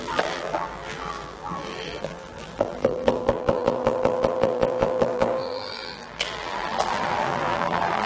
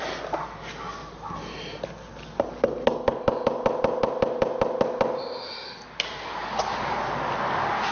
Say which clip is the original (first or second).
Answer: second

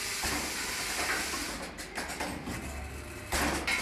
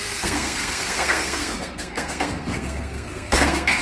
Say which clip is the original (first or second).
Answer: first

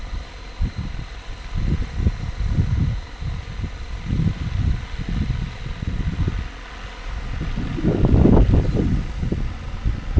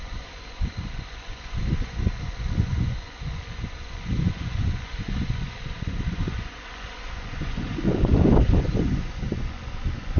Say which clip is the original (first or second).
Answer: first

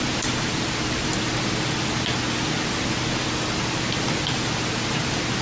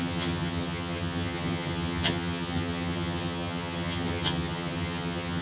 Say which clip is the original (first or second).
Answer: first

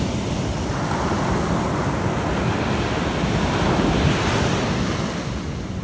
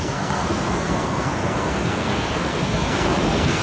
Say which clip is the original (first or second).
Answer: first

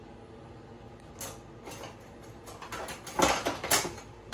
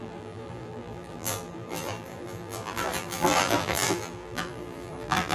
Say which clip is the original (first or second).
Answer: first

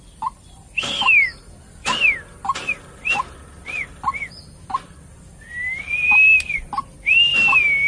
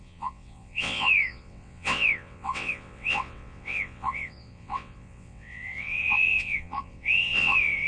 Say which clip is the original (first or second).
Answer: first